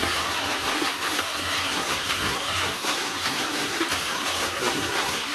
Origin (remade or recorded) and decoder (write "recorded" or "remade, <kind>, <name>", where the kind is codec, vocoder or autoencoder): remade, codec, SNAC